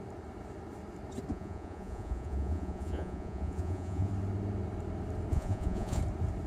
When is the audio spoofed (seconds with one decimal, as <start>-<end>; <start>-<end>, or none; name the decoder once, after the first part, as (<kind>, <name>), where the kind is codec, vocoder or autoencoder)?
1.3-4.1 (vocoder, Vocos); 5.3-6.0